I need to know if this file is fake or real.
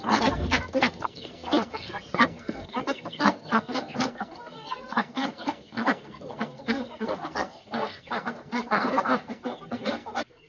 fake